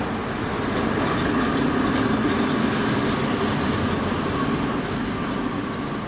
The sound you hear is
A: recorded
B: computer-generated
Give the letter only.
A